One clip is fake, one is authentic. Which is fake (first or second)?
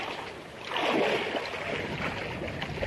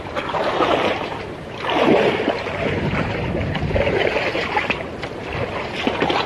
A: second